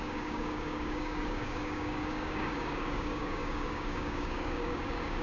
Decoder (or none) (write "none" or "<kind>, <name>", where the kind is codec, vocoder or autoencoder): codec, DAC